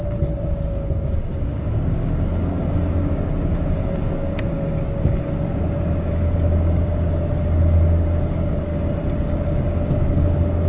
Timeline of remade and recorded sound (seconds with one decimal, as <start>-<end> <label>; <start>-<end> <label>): 0.0-8.7 remade; 8.7-9.3 recorded; 9.3-10.7 remade